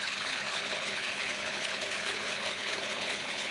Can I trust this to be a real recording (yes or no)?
no